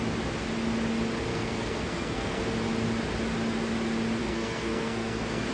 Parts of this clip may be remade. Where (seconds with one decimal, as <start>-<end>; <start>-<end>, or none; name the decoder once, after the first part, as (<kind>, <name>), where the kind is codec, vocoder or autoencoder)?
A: 1.3-2.4 (codec, SNAC); 4.2-5.5